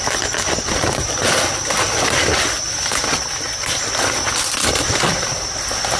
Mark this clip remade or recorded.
recorded